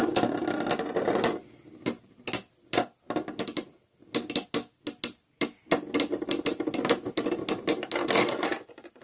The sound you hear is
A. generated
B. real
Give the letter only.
B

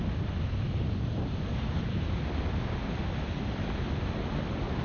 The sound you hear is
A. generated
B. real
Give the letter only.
B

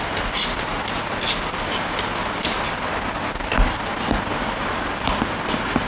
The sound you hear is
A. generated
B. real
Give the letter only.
B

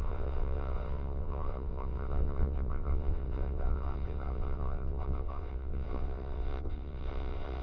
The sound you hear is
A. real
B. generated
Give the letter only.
B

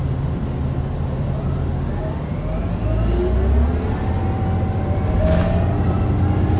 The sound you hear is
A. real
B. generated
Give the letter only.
A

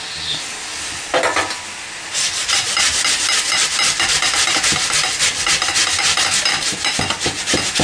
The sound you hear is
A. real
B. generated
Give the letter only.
A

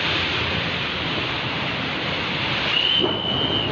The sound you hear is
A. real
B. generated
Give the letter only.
A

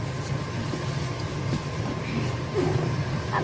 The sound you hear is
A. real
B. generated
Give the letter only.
A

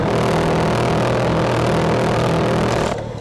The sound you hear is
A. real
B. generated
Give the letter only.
A